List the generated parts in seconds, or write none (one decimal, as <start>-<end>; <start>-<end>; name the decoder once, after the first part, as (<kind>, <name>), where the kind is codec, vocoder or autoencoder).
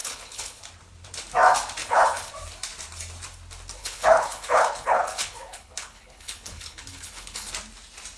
0.0-0.6 (codec, HILCodec); 1.8-2.3; 3.8-7.5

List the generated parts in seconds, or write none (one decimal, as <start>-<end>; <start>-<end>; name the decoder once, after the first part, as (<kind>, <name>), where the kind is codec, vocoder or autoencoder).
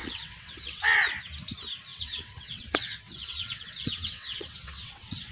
0.0-0.8 (vocoder, WaveNeXt); 1.9-5.3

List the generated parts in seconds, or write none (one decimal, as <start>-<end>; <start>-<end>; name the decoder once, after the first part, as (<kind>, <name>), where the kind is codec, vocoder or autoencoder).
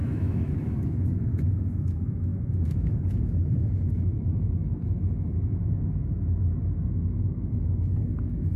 0.0-8.6 (autoencoder, DAC-VAE)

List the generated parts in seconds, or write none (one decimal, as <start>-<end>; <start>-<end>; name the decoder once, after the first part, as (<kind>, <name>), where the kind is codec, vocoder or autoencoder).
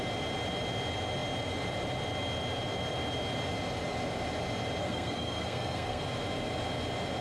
4.8-6.0 (codec, SNAC)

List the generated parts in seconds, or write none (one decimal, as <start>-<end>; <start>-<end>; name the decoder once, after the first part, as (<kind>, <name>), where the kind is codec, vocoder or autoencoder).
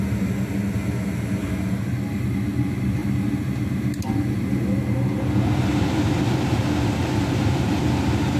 none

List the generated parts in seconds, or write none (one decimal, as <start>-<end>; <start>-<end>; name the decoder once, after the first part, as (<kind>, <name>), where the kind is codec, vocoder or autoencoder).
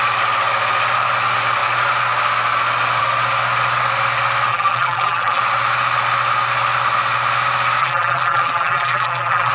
4.5-5.4 (vocoder, BigVGAN v2); 7.8-9.5